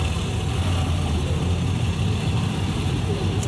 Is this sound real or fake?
real